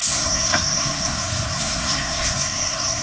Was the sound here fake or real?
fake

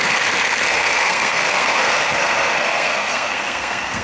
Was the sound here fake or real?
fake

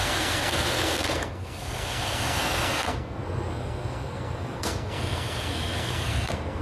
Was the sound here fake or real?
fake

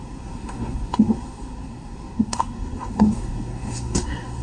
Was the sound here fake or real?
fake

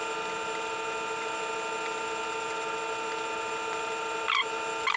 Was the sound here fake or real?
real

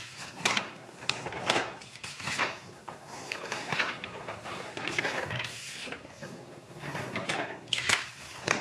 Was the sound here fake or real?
fake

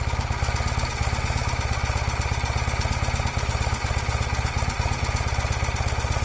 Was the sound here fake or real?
real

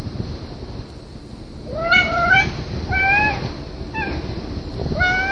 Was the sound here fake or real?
real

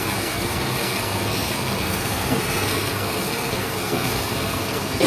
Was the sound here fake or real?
fake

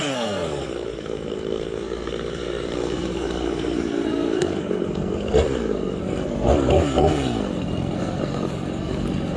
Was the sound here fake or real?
fake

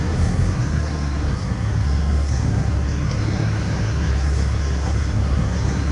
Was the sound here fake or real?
fake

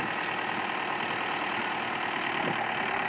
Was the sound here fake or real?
real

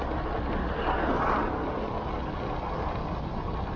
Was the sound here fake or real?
real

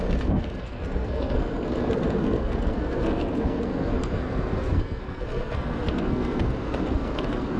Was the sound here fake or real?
fake